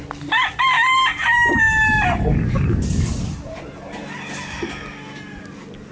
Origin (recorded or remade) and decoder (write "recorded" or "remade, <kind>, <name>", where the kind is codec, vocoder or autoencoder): recorded